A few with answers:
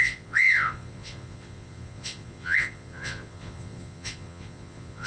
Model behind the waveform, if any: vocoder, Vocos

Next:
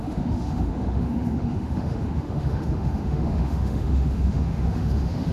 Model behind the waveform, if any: autoencoder, DAC-VAE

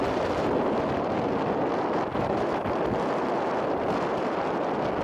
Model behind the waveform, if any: none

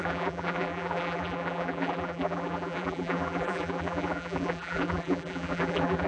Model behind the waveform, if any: vocoder, BigVGAN v2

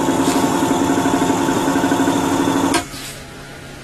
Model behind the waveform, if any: none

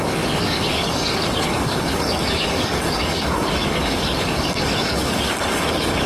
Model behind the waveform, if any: codec, DAC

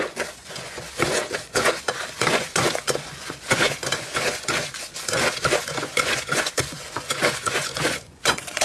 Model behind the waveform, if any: vocoder, Vocos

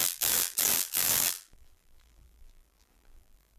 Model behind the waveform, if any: vocoder, BigVGAN v2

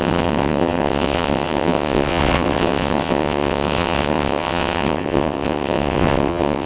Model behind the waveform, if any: vocoder, WaveNeXt